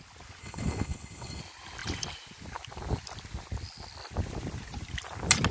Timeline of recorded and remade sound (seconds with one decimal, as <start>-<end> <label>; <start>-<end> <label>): 0.0-0.4 recorded; 0.4-1.4 remade; 1.4-5.5 recorded